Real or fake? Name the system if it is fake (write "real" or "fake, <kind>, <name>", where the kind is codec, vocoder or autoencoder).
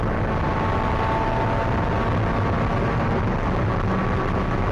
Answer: real